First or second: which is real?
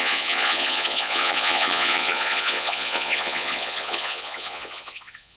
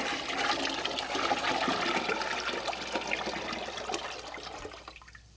second